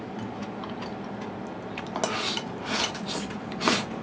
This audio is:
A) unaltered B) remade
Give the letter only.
A